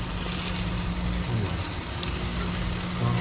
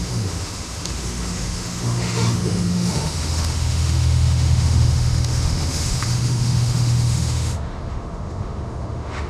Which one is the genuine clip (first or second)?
first